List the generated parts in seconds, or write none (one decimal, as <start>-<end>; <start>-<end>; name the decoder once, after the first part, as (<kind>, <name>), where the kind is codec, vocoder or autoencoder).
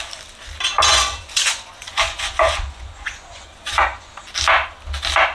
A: 0.9-4.1 (vocoder, Vocos)